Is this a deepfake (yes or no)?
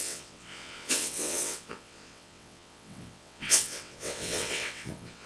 yes